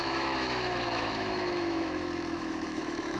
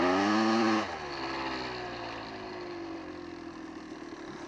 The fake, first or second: first